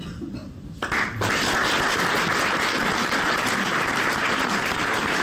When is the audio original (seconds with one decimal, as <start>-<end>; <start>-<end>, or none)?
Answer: 0.4-2.5